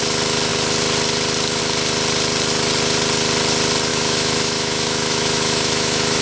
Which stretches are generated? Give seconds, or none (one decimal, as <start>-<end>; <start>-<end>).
3.9-6.2